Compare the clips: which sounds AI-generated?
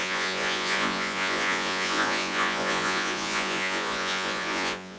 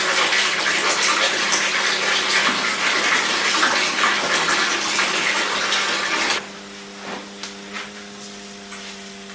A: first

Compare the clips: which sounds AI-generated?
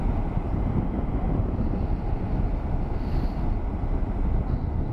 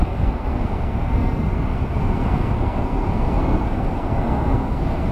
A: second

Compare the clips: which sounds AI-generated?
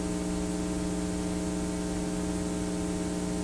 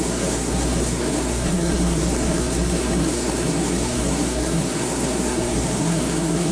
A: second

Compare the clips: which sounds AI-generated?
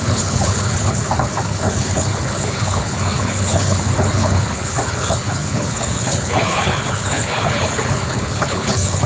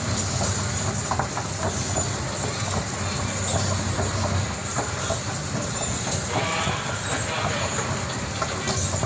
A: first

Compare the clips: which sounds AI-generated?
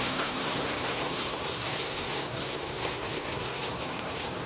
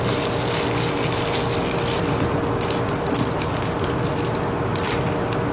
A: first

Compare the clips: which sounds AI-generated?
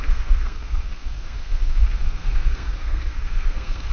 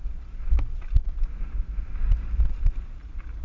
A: first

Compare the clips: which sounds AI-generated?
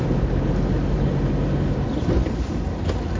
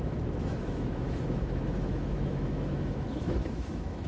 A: second